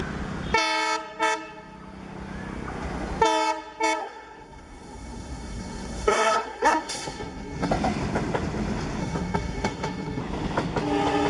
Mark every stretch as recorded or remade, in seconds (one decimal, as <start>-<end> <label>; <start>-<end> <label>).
0.0-4.0 recorded; 4.0-7.7 remade; 7.7-9.0 recorded; 9.0-10.2 remade; 10.2-11.3 recorded